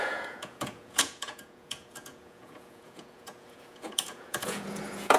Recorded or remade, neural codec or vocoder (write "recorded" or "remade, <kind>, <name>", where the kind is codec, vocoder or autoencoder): remade, vocoder, Vocos